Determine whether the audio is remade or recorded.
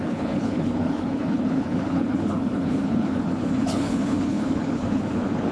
remade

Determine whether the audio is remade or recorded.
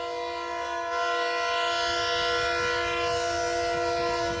recorded